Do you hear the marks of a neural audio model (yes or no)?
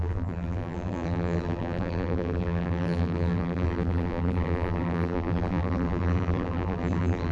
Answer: yes